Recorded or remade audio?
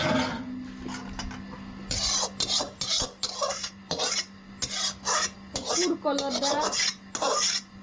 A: recorded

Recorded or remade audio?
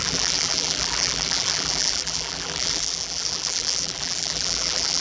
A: remade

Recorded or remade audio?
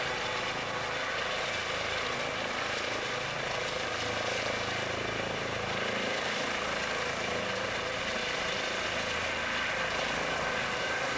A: recorded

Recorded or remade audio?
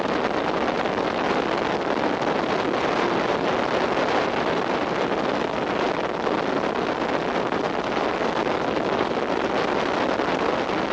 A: recorded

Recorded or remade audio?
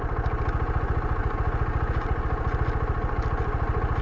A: recorded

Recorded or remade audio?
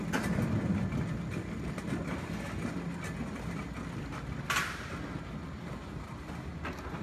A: recorded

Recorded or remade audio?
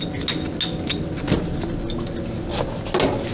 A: recorded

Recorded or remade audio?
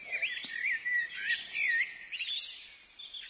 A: recorded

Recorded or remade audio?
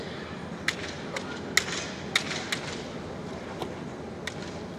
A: recorded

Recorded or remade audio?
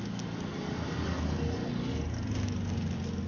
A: recorded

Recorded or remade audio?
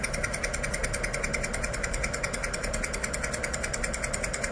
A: recorded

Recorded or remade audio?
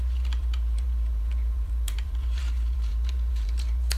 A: remade